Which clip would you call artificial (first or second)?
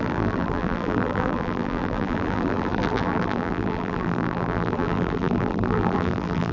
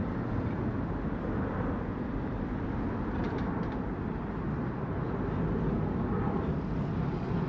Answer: first